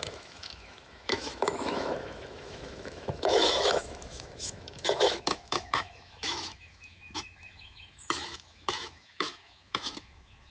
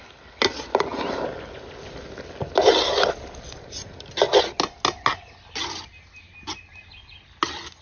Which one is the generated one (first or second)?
first